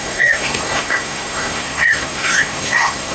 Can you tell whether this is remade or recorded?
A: remade